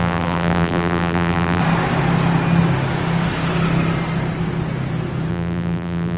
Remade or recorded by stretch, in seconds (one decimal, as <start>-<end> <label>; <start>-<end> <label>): 0.0-1.6 remade; 1.6-5.3 recorded; 5.3-6.2 remade